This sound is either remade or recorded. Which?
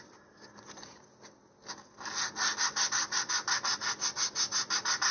recorded